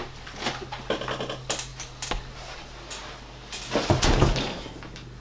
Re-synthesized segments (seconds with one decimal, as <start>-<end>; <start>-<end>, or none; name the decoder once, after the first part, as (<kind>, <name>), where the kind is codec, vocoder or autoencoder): none